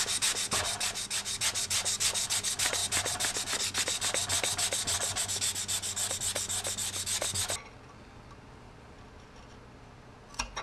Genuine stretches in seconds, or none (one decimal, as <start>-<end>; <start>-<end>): 0.0-10.6